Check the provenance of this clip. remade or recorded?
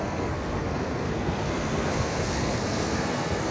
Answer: remade